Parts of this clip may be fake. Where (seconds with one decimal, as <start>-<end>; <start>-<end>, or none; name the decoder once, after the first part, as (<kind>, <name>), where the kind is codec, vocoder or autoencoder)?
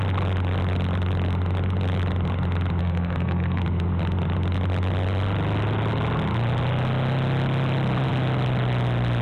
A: 2.8-3.6 (codec, SNAC)